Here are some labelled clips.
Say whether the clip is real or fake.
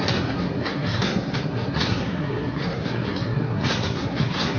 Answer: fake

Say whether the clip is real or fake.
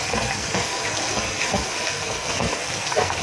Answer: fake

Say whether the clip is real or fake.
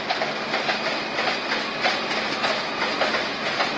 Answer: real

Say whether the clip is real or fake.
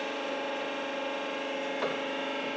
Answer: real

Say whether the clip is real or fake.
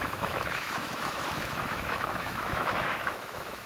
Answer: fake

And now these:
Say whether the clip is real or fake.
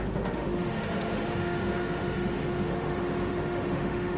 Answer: fake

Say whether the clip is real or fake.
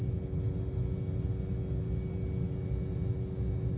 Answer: real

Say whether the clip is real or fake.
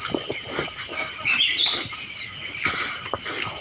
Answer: real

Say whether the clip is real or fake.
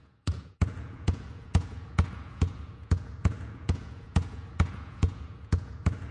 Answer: fake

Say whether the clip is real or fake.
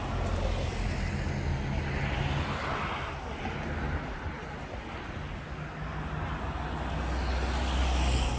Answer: real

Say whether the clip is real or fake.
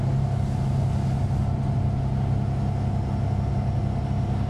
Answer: real